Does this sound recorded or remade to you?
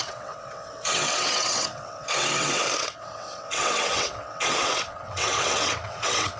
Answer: remade